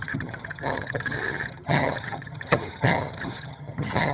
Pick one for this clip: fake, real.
fake